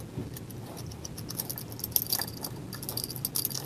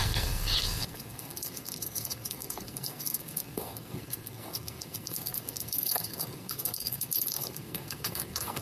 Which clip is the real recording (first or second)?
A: first